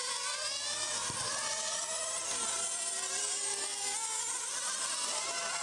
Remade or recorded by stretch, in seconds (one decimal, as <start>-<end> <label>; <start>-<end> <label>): 0.0-5.6 recorded